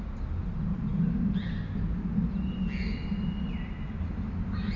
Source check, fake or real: real